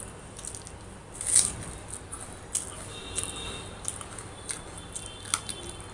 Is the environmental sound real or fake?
real